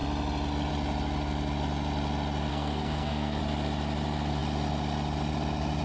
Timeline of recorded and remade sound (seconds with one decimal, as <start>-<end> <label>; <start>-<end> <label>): 0.0-2.5 recorded; 2.5-3.4 remade; 3.4-5.8 recorded